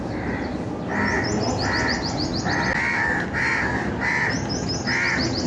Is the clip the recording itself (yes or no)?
yes